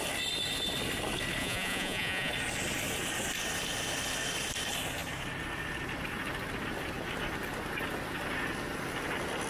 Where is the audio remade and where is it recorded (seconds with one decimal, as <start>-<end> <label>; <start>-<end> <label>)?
0.0-1.4 recorded; 1.4-2.3 remade; 2.3-9.5 recorded